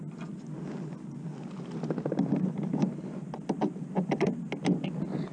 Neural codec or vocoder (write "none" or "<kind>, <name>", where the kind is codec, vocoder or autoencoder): none